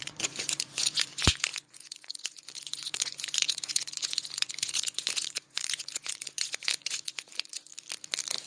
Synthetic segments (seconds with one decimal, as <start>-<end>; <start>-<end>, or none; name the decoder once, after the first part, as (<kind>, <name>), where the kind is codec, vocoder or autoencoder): 0.0-7.7 (vocoder, Vocos)